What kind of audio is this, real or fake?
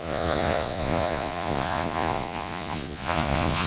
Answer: fake